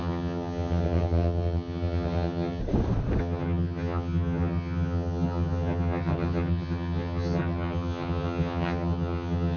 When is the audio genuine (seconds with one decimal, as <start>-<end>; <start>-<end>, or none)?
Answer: 2.6-3.2